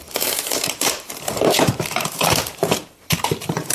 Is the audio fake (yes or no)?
yes